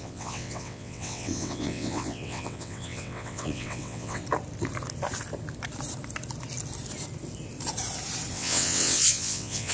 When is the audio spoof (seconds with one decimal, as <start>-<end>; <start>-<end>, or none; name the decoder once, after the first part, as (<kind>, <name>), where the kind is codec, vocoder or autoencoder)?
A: 0.0-4.2 (vocoder, WaveNeXt); 8.3-9.7